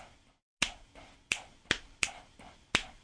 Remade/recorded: recorded